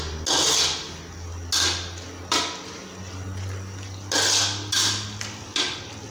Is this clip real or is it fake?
real